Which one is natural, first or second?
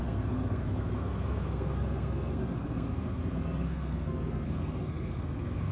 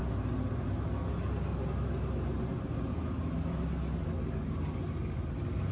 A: second